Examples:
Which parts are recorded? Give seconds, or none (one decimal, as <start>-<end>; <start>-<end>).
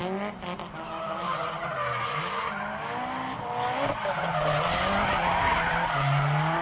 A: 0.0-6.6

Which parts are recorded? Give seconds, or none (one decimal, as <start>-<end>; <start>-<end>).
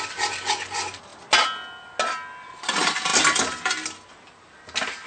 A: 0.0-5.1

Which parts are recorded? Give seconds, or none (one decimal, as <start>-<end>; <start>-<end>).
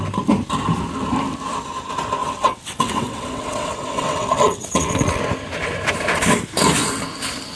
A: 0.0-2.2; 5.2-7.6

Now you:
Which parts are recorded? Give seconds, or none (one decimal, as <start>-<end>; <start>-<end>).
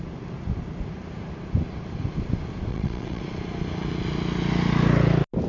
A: 0.0-2.7; 3.2-5.5